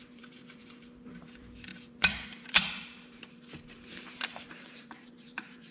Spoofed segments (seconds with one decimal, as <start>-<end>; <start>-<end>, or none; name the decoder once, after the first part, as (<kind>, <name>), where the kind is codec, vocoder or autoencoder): 0.0-5.7 (vocoder, BigVGAN v2)

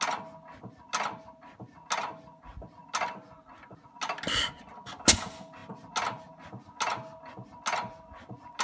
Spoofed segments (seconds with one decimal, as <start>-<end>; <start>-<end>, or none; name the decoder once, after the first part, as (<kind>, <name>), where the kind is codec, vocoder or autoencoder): none

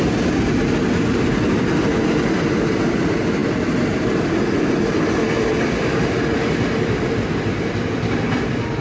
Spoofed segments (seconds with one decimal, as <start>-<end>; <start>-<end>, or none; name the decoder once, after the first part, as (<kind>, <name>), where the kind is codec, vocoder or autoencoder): none